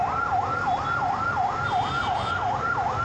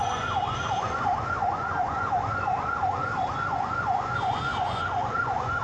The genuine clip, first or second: first